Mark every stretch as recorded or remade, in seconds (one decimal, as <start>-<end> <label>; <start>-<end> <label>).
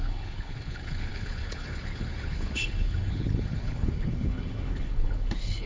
0.0-5.7 remade